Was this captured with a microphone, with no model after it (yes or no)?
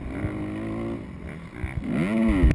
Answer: yes